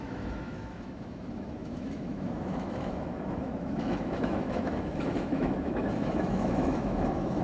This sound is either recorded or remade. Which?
remade